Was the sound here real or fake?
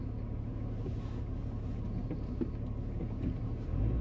real